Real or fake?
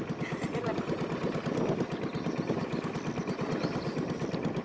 real